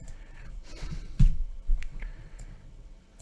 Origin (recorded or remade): remade